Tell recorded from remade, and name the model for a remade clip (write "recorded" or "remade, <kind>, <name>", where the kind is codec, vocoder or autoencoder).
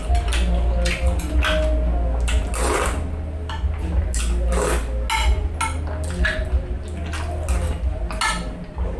recorded